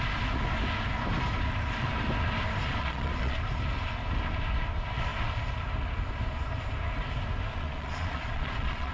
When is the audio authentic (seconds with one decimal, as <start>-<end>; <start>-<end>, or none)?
0.0-2.8; 3.4-7.5